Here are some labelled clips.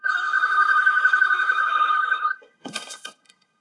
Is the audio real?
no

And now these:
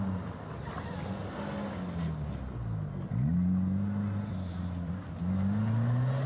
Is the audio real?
yes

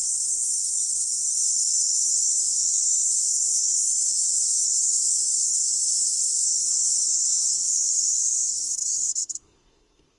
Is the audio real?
no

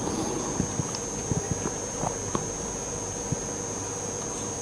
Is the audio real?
yes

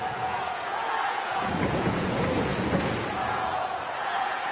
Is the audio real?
no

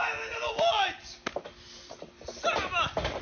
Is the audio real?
yes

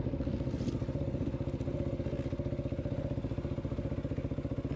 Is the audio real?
yes